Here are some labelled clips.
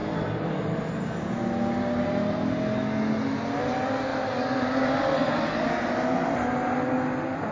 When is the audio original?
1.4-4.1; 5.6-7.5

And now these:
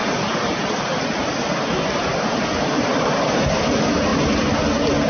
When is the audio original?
0.8-2.9; 3.6-5.1

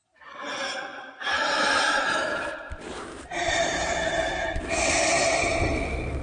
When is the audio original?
0.0-0.9; 4.6-6.2

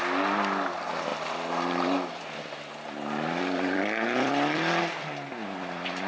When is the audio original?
0.0-1.1; 4.8-6.1

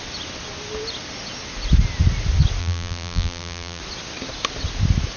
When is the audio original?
0.0-2.6; 3.8-5.2

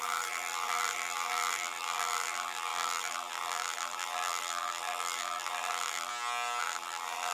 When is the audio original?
6.1-6.6

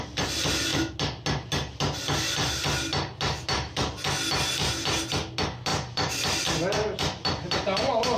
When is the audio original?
0.0-5.7; 6.4-8.2

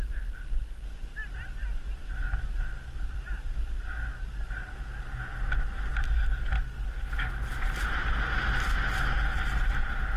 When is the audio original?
0.0-0.6; 3.7-10.2